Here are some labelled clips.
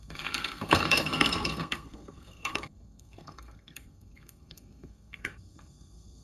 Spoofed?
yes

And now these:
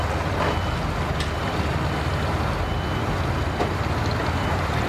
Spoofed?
no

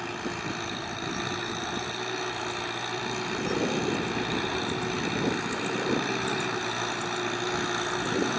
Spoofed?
no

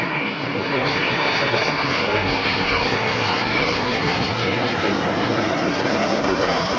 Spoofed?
yes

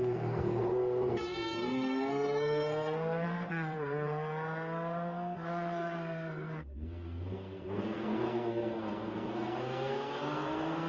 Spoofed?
yes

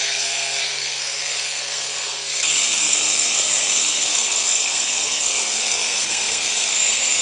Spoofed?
yes